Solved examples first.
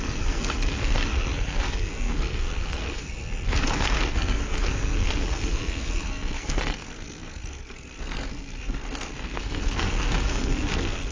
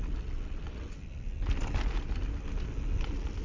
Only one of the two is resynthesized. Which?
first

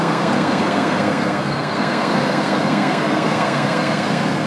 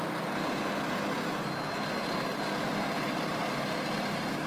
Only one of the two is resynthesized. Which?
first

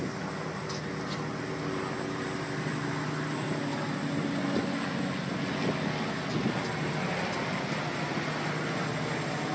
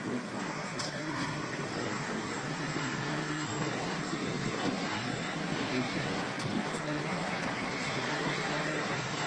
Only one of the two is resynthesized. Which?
second